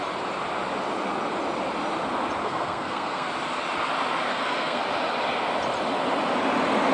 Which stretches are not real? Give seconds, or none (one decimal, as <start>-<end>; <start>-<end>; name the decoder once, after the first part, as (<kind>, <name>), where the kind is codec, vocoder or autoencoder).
2.4-3.3 (codec, SNAC); 4.3-4.8